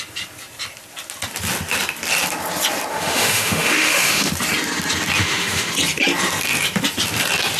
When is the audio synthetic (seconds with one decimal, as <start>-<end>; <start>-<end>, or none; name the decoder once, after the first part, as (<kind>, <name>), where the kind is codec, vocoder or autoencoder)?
2.9-4.3 (autoencoder, DAC-VAE); 5.2-5.7